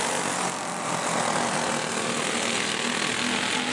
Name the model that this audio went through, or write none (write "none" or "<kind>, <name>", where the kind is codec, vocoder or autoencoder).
none